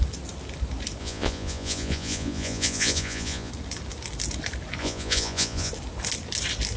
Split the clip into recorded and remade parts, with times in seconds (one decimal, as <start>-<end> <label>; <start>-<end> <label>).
0.0-1.0 recorded; 1.0-3.5 remade; 3.5-4.8 recorded; 4.8-5.7 remade; 5.7-6.8 recorded